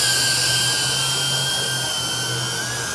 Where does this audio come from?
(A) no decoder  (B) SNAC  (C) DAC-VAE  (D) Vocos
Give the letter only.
A